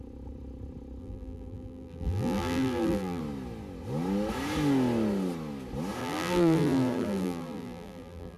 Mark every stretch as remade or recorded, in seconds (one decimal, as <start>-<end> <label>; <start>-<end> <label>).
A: 0.0-1.0 recorded; 1.0-3.2 remade; 3.2-6.0 recorded; 6.0-8.4 remade